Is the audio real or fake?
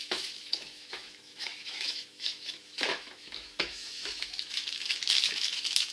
fake